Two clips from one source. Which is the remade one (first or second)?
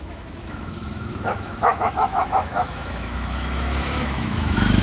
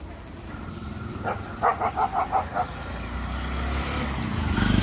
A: first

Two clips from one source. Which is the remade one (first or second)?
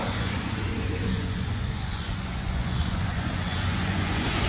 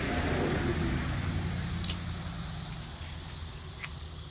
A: first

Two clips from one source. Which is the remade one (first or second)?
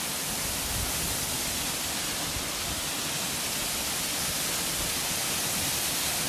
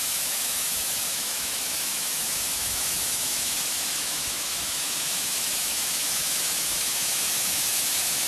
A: second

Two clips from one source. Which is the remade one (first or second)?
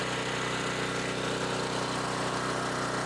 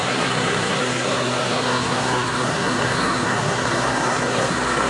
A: second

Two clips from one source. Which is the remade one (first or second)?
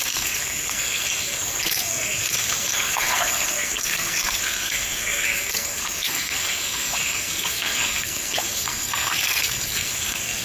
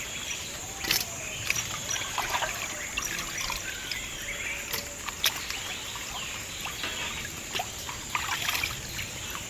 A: first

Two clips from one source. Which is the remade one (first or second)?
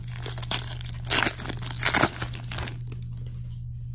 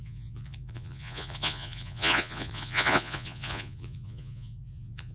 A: second